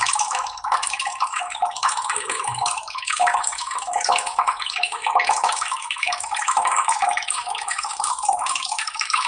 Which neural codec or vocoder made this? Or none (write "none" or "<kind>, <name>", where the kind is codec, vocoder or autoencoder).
autoencoder, DAC-VAE